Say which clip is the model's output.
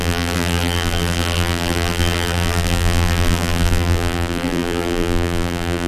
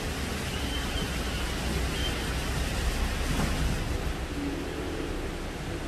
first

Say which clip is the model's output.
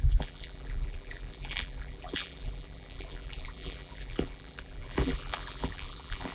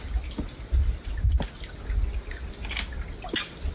first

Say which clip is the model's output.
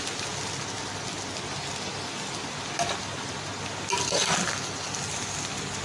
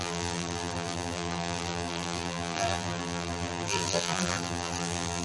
second